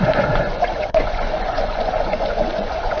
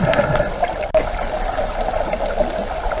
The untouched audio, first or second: second